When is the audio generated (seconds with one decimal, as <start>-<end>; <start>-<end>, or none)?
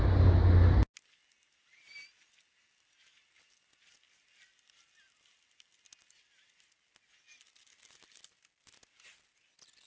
none